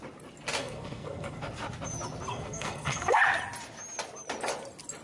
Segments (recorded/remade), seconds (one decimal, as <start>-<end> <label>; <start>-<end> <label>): 0.0-0.6 recorded; 0.6-1.4 remade; 1.4-2.3 recorded; 2.3-3.2 remade; 3.2-5.0 recorded